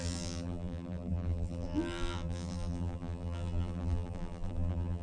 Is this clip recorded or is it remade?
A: remade